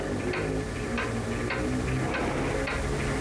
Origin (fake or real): real